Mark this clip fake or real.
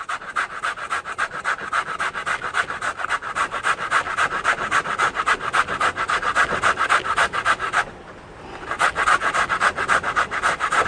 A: real